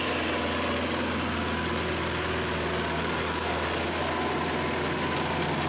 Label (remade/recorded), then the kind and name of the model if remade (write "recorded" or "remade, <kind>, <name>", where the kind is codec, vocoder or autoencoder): recorded